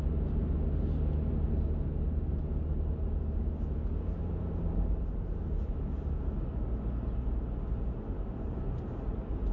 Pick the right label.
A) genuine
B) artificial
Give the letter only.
A